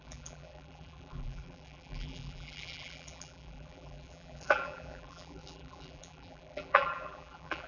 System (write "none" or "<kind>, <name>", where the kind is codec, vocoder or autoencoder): vocoder, BigVGAN v2